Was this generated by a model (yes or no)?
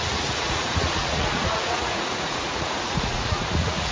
yes